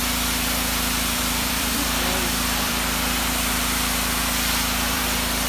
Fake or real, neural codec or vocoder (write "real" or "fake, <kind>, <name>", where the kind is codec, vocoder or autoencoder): fake, vocoder, BigVGAN v2